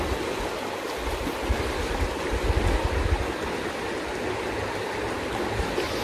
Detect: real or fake real